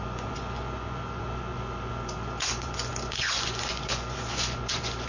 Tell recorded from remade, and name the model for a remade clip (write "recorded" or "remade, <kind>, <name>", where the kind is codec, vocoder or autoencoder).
remade, vocoder, Vocos